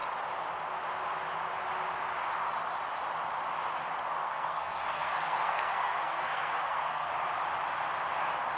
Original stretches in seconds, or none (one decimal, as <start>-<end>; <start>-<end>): 0.0-4.2; 7.1-8.6